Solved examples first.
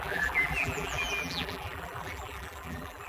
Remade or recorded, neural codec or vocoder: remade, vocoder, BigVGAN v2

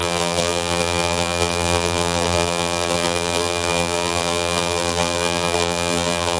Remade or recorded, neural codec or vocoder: remade, vocoder, BigVGAN v2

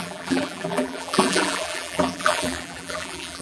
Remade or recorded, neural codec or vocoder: remade, vocoder, BigVGAN v2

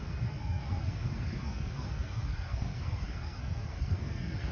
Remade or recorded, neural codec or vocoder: remade, codec, SNAC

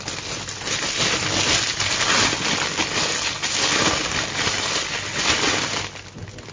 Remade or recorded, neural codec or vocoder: recorded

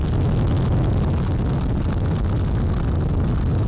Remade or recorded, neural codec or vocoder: recorded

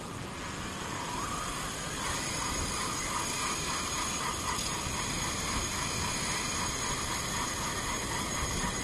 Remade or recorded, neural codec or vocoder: recorded